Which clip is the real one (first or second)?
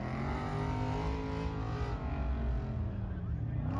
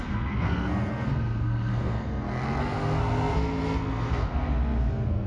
first